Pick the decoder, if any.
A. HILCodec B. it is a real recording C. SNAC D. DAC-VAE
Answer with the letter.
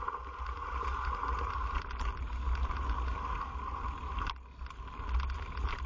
B